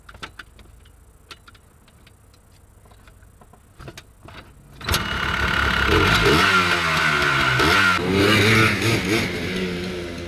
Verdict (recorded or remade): recorded